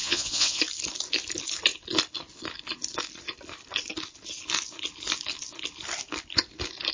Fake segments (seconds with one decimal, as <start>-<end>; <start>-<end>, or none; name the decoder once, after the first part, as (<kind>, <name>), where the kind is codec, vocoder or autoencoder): 0.0-0.6 (vocoder, Vocos)